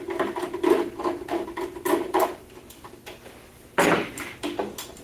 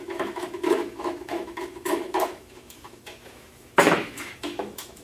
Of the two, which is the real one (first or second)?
first